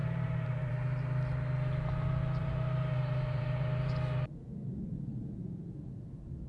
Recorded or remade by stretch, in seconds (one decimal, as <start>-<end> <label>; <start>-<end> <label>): 0.0-0.7 remade; 0.7-2.4 recorded; 2.4-3.9 remade; 3.9-6.5 recorded